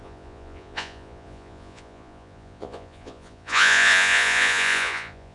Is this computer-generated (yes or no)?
yes